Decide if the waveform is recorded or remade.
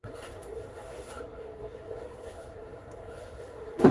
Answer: remade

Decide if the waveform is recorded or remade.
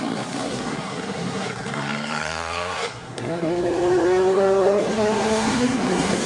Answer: remade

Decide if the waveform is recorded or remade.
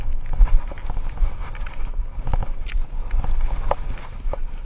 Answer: recorded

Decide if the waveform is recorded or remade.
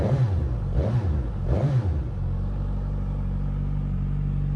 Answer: recorded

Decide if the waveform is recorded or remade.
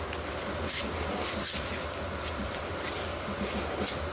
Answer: recorded